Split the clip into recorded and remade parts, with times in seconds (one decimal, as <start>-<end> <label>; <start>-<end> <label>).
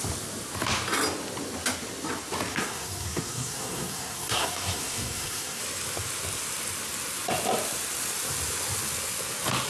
0.0-2.5 recorded; 2.5-5.6 remade; 5.6-9.7 recorded